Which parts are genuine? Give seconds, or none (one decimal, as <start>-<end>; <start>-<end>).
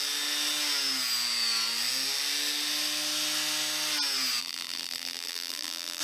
0.0-4.4